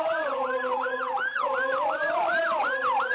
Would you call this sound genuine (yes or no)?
no